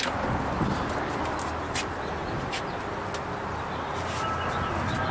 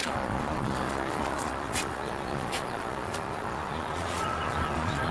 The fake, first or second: second